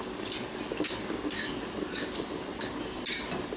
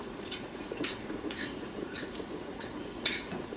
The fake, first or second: second